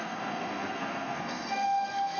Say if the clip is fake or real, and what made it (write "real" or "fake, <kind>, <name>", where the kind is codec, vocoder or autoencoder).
fake, codec, SNAC